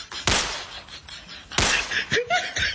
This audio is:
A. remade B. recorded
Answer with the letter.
B